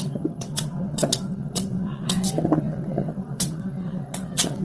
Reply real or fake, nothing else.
fake